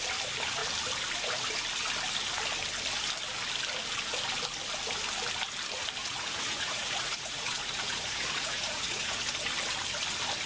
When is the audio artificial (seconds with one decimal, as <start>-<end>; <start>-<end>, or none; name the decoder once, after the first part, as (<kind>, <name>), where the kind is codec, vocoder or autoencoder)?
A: 6.0-9.2 (vocoder, Vocos)